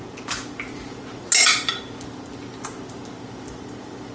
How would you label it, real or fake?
real